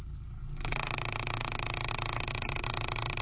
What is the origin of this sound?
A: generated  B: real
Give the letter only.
B